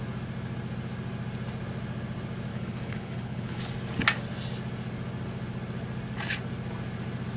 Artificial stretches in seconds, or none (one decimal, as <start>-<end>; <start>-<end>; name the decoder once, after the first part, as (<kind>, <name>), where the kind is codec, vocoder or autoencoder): 2.5-3.6 (codec, HILCodec)